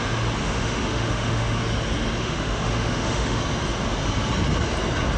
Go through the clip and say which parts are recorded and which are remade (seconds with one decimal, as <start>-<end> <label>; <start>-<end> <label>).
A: 0.0-0.4 recorded; 0.4-1.6 remade; 1.6-2.2 recorded; 2.2-3.4 remade; 3.4-5.2 recorded